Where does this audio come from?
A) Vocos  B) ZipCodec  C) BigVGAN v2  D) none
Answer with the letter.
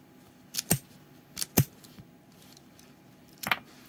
D